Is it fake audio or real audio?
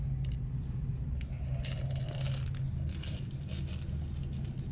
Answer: real